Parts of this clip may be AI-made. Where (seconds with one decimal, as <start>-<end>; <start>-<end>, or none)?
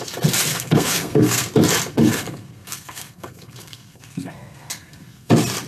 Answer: 0.5-1.5; 1.9-5.3